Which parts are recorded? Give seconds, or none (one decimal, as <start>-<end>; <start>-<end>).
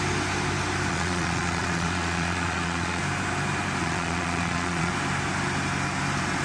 0.0-0.9; 3.0-3.8; 4.9-6.4